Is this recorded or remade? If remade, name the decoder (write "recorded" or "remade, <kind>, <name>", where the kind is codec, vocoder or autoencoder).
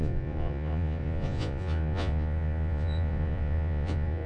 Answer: remade, vocoder, Vocos